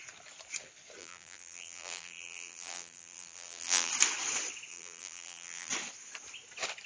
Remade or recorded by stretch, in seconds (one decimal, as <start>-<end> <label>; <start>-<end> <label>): 0.0-1.0 recorded; 1.0-3.9 remade; 3.9-4.7 recorded; 4.7-5.7 remade; 5.7-6.9 recorded